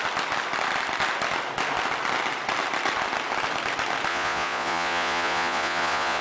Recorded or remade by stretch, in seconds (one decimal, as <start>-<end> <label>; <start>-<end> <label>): 0.0-4.1 recorded; 4.1-6.2 remade